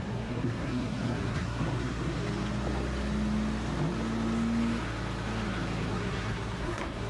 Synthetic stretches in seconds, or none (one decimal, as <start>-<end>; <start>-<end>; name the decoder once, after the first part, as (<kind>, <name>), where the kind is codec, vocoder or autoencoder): 0.0-2.2 (codec, SNAC); 5.9-7.1